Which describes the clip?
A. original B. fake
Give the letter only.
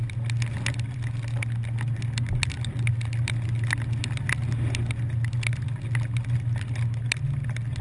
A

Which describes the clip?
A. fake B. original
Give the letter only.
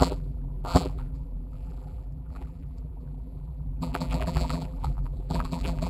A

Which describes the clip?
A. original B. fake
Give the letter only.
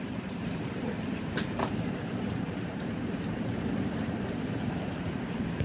B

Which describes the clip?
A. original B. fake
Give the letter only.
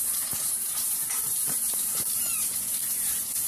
B